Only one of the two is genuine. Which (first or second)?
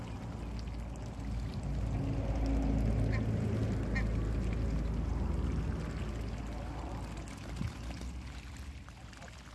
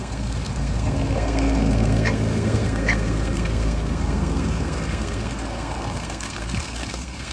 first